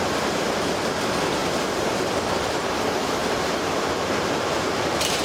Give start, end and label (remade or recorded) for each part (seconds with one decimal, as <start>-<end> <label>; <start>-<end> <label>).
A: 0.0-1.4 recorded; 1.4-2.0 remade; 2.0-3.2 recorded; 3.2-5.2 remade